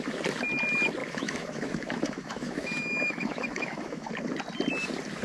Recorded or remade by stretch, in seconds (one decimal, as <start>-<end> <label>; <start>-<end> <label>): 0.0-1.0 recorded; 1.0-4.1 remade; 4.1-5.2 recorded